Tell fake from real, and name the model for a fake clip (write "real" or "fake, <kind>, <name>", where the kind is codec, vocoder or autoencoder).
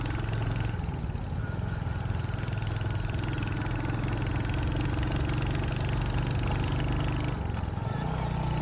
real